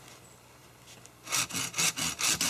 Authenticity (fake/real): real